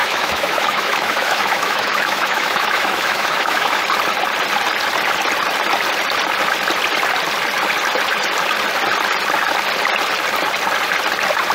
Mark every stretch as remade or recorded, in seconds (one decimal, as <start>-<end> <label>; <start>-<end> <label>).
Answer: 0.0-3.8 remade; 3.8-11.5 recorded